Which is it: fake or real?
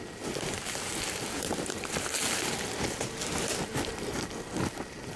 real